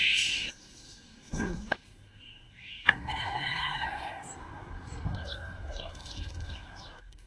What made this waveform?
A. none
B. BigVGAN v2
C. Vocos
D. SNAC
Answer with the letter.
D